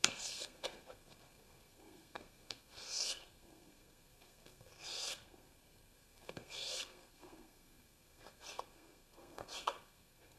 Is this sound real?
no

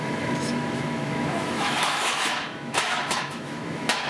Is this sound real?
no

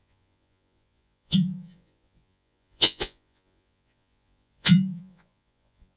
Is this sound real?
no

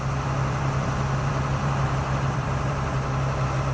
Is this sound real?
no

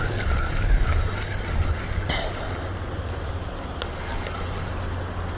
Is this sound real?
yes